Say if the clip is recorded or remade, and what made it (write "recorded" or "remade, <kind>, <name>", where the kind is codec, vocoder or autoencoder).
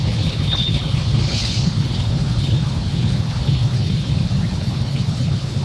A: remade, codec, HILCodec